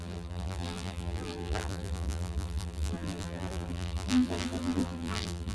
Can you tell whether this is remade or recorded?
remade